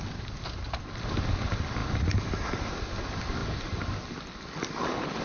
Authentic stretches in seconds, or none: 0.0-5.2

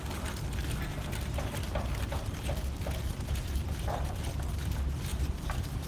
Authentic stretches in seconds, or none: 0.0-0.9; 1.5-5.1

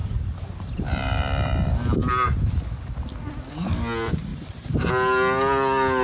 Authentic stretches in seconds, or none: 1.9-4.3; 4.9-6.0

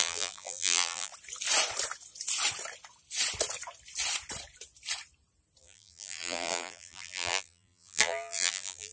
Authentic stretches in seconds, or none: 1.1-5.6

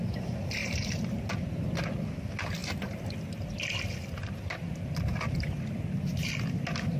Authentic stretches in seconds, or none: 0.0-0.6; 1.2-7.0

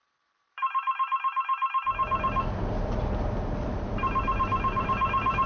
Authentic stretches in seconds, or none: 1.5-4.4

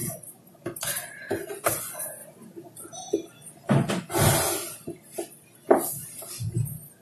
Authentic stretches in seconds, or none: 1.4-2.2; 3.9-6.0

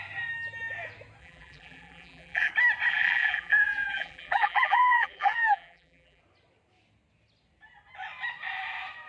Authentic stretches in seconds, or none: 0.0-1.2; 2.5-2.9; 6.2-9.1